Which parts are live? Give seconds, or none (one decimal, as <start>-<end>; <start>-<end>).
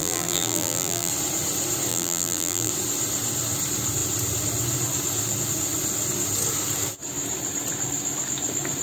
1.1-1.9; 2.7-8.8